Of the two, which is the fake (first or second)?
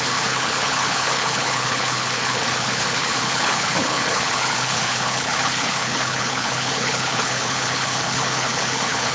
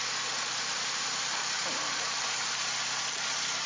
first